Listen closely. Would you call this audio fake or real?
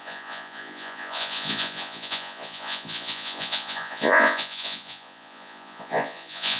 fake